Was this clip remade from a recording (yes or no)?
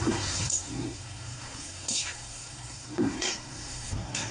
yes